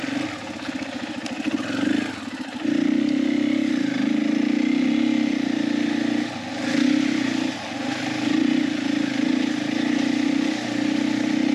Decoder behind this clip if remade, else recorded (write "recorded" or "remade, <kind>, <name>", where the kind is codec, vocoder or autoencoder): recorded